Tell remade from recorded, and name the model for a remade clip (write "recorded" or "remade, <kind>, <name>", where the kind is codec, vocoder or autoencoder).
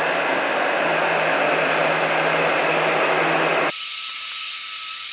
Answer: recorded